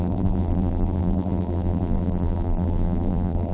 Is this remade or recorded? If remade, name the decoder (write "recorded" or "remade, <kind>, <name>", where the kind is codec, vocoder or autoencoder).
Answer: remade, vocoder, BigVGAN v2